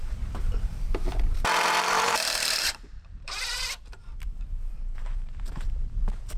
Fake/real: fake